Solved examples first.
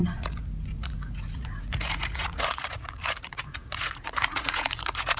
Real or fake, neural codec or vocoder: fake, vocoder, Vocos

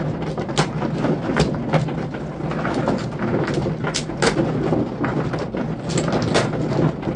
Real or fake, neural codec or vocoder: real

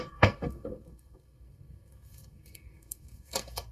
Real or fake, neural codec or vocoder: fake, codec, SNAC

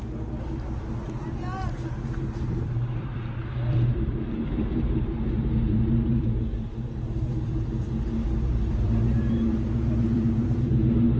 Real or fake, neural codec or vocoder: fake, vocoder, BigVGAN v2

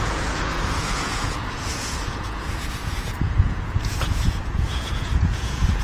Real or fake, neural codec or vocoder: fake, vocoder, Vocos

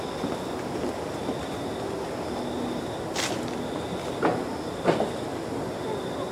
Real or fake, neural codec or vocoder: real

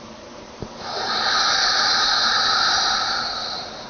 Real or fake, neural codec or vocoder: fake, vocoder, BigVGAN v2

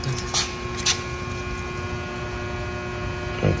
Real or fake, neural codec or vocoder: real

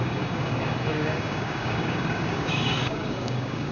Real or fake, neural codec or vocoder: fake, codec, DAC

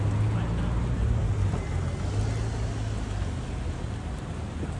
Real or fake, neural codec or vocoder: real